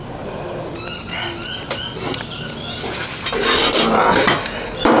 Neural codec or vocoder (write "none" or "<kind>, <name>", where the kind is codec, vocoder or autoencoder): none